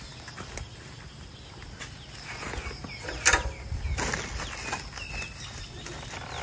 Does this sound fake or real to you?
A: real